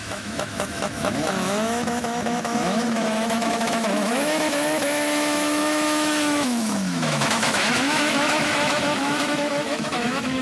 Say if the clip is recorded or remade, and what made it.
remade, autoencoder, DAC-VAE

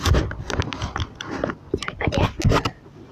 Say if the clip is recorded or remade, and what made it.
recorded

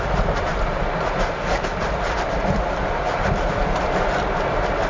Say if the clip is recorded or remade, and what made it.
remade, vocoder, BigVGAN v2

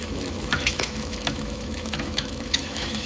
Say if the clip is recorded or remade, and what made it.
remade, autoencoder, DAC-VAE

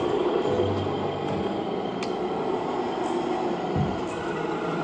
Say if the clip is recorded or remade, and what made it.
recorded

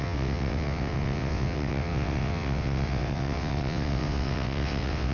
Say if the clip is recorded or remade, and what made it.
remade, vocoder, WaveNeXt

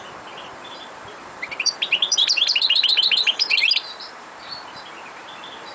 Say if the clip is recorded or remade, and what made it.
remade, vocoder, BigVGAN v2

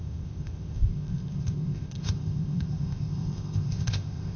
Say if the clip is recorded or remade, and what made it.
remade, codec, ZipCodec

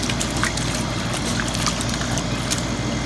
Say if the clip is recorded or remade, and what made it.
recorded